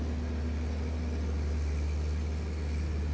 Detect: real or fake real